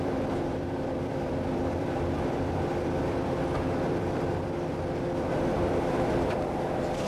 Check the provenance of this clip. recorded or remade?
remade